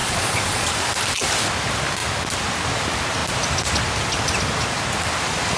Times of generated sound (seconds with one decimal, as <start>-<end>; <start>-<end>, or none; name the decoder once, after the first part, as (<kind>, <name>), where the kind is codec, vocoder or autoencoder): 0.0-0.7 (vocoder, Vocos)